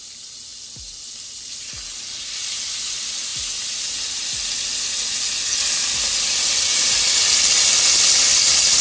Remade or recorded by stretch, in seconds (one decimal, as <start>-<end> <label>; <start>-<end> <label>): 0.0-8.8 recorded

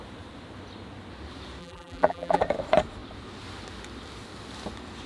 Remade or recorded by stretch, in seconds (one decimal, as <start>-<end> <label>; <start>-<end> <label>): 0.0-1.6 recorded; 1.6-2.4 remade; 2.4-5.1 recorded

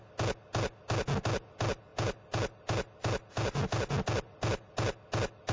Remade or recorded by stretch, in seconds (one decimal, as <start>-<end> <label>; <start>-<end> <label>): 0.0-5.5 recorded

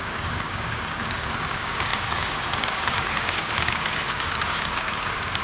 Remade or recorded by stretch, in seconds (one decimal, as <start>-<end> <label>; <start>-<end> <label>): 0.0-5.4 remade